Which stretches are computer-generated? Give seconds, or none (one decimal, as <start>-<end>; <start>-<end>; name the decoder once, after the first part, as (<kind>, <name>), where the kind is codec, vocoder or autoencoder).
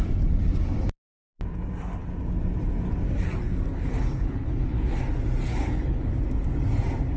3.7-5.0 (codec, HILCodec); 5.5-6.1